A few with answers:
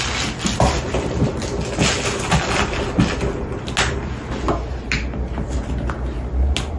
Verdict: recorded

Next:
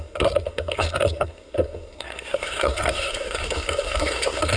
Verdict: remade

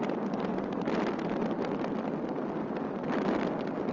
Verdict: recorded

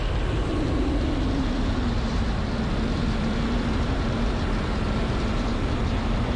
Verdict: recorded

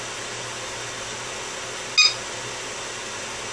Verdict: recorded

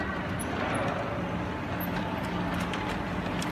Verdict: recorded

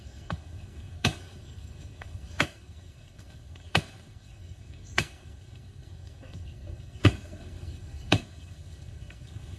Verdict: remade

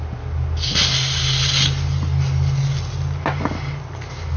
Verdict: recorded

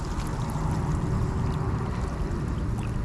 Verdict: recorded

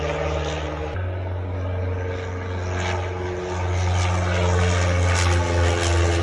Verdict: recorded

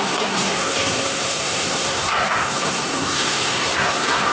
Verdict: remade